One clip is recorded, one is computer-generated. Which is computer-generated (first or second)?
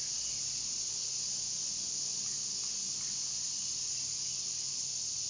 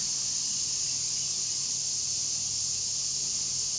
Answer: second